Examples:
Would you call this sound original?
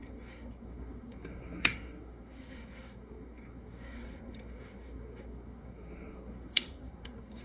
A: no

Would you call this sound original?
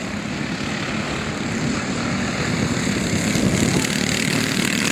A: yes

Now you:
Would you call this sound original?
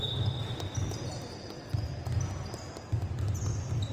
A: yes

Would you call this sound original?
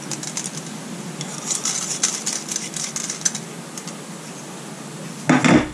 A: yes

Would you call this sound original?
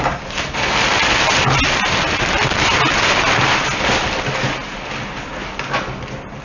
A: yes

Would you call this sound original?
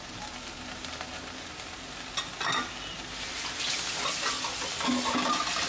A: yes